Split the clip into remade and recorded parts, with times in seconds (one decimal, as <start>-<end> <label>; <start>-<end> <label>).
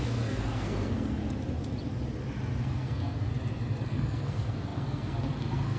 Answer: 0.0-1.2 remade; 1.2-2.6 recorded; 2.6-3.3 remade; 3.3-3.9 recorded; 3.9-5.8 remade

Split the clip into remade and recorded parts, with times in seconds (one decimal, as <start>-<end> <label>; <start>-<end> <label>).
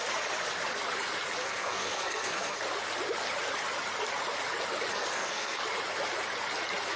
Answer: 0.0-1.4 recorded; 1.4-2.6 remade; 2.6-4.9 recorded; 4.9-5.6 remade; 5.6-7.0 recorded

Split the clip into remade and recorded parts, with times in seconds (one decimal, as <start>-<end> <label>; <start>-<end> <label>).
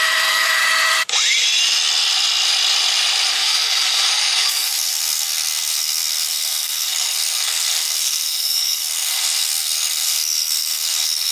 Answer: 0.0-0.6 remade; 0.6-3.3 recorded; 3.3-11.3 remade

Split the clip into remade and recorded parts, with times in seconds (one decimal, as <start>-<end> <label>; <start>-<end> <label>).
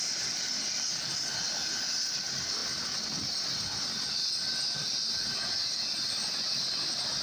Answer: 0.0-7.2 recorded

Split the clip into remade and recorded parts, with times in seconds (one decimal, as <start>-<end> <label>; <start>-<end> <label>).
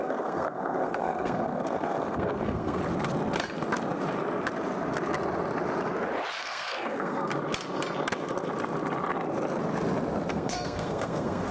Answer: 0.0-2.8 remade; 2.8-6.4 recorded; 6.4-7.3 remade; 7.3-10.3 recorded; 10.3-11.5 remade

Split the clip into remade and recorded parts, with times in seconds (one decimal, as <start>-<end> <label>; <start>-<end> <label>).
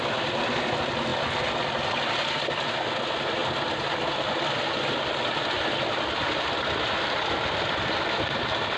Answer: 0.0-8.8 recorded